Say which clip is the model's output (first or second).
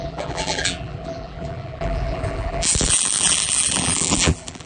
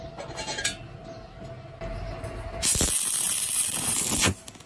first